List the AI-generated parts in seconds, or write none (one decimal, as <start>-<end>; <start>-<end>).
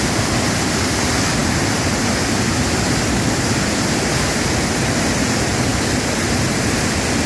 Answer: none